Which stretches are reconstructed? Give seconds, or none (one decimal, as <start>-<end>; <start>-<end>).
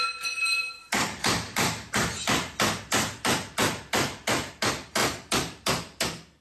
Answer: 0.8-4.6; 5.0-6.4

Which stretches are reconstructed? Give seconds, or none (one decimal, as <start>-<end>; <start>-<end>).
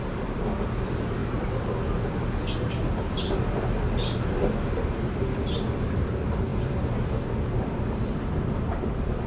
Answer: none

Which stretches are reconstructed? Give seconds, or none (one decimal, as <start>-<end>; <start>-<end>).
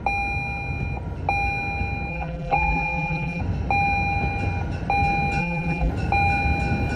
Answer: 2.1-3.4; 5.4-5.9